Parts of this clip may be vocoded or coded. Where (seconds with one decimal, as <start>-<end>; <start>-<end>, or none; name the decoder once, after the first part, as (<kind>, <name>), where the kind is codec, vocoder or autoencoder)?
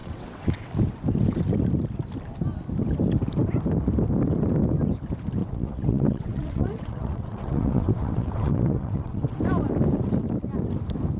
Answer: 0.0-0.7 (vocoder, WaveNeXt); 5.4-9.4